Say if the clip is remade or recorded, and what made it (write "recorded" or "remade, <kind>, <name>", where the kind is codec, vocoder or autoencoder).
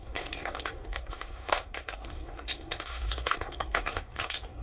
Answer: remade, codec, SNAC